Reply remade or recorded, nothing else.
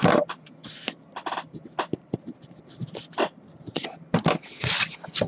remade